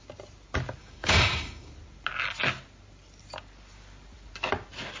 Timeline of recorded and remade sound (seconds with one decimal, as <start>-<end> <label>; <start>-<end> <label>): 0.0-0.8 recorded; 0.8-1.7 remade; 1.7-5.0 recorded